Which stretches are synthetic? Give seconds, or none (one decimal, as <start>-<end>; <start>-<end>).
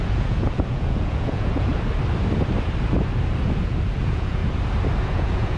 0.0-1.7; 4.0-4.4; 5.0-5.6